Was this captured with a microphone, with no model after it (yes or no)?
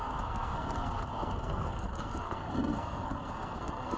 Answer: no